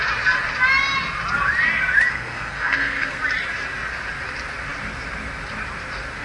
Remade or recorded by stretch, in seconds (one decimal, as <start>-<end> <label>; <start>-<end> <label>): 0.0-2.1 recorded; 2.1-3.2 remade; 3.2-6.2 recorded